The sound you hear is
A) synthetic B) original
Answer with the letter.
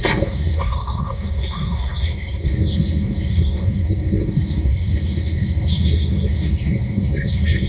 A